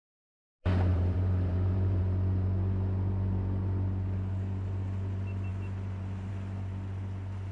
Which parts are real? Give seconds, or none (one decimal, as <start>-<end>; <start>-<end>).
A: 0.0-0.9; 2.0-7.5